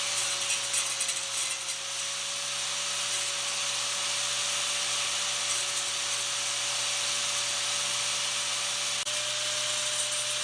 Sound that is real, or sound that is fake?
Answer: real